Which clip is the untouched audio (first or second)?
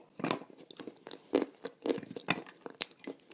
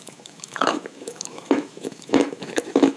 first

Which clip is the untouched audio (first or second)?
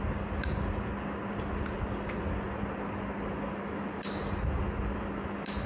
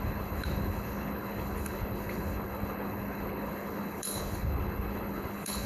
first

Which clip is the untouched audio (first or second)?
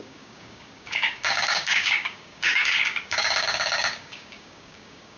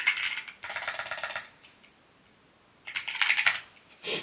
second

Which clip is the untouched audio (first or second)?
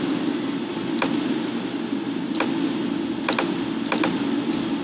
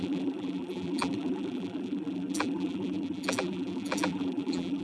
first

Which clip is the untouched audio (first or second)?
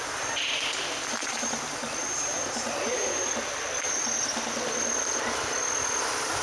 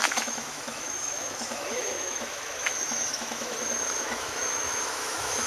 first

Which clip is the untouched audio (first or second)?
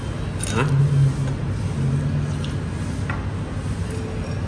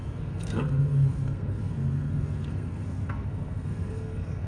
first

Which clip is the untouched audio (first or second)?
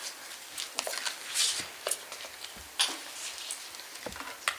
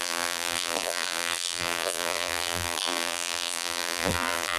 first